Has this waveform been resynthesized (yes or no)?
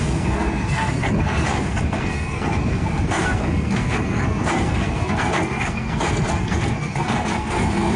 yes